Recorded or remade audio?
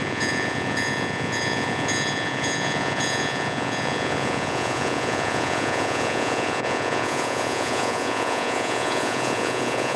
remade